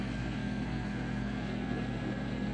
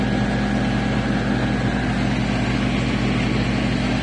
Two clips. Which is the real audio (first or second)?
second